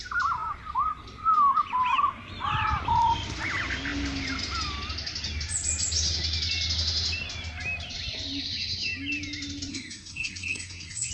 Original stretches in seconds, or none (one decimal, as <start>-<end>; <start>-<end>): 0.0-9.7